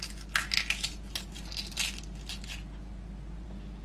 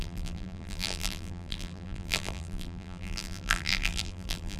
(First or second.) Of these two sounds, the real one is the first